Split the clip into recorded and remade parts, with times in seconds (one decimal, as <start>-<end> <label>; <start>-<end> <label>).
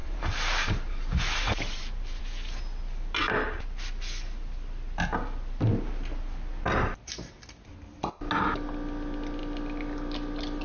0.0-2.2 remade; 2.2-10.6 recorded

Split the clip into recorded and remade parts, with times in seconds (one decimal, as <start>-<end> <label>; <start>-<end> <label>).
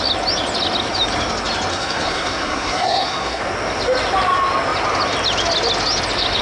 0.0-1.7 recorded; 1.7-3.4 remade; 3.4-6.4 recorded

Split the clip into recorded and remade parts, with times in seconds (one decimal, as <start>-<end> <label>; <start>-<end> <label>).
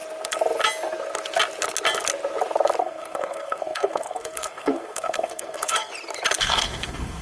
0.0-2.8 recorded; 2.8-5.9 remade; 5.9-6.4 recorded; 6.4-7.2 remade